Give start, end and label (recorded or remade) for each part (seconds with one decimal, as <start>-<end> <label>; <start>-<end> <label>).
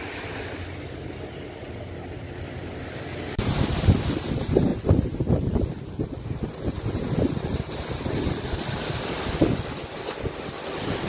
0.0-11.1 recorded